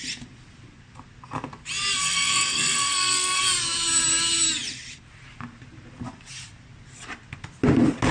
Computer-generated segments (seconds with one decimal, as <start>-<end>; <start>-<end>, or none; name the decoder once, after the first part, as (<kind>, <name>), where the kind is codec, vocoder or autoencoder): 2.0-3.4 (codec, SNAC)